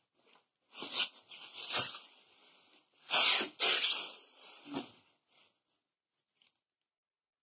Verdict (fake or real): real